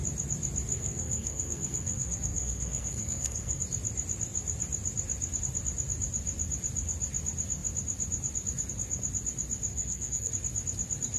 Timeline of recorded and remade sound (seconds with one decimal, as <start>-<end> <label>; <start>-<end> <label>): 0.0-0.7 recorded; 0.7-3.6 remade; 3.6-9.7 recorded; 9.7-10.3 remade; 10.3-11.2 recorded